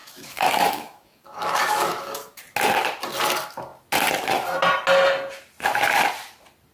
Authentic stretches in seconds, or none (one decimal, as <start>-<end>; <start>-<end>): 2.4-6.7

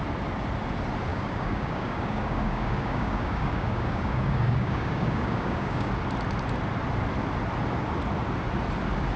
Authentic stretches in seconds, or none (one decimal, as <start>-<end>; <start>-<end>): 0.0-1.1; 5.9-9.2

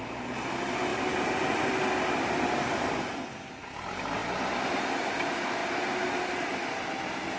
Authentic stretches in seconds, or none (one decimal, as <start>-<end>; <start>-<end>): 0.0-7.4

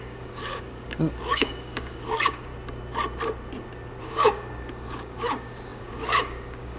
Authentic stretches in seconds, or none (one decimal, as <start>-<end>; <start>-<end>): 2.5-4.0